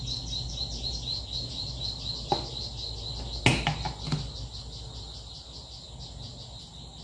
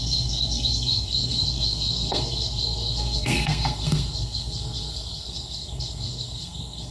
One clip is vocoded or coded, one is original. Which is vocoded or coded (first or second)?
second